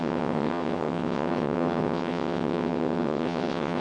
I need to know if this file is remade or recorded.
remade